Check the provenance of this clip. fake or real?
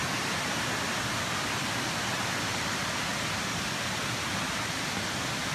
real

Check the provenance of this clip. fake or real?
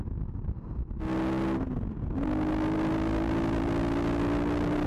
real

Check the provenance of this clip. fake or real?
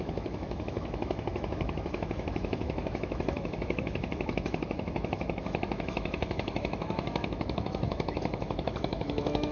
fake